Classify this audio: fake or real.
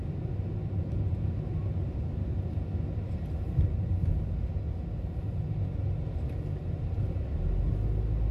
real